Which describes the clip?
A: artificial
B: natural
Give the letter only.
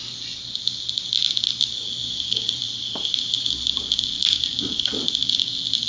B